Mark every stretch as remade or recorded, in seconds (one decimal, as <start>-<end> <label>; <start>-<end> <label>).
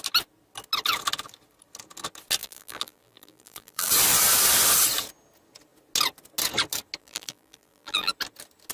0.0-2.4 recorded; 2.4-3.9 remade; 3.9-7.0 recorded; 7.0-8.1 remade; 8.1-8.7 recorded